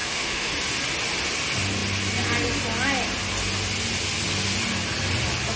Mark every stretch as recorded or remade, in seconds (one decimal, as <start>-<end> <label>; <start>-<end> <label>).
0.0-0.5 remade; 0.5-5.6 recorded